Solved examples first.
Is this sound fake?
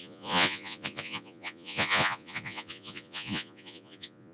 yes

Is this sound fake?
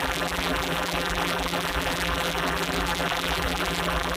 yes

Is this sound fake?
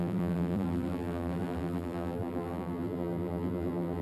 yes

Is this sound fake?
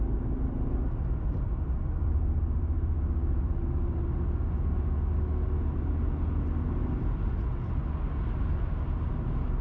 no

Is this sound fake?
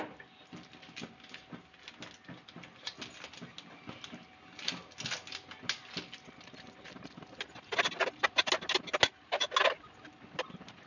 no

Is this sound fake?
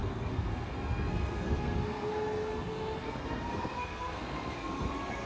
yes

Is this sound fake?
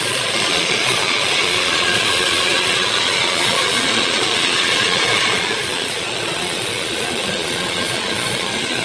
yes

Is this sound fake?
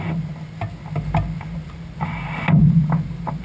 no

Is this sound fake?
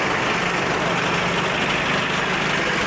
no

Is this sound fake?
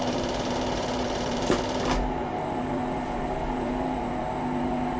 yes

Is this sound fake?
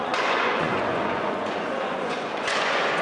yes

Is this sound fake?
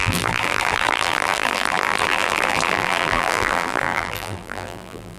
yes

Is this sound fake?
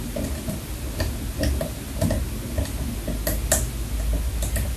no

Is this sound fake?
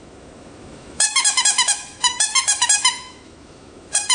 yes